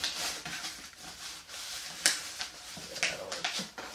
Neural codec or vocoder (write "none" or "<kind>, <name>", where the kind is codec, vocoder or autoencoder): none